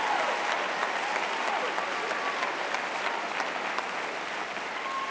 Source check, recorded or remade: recorded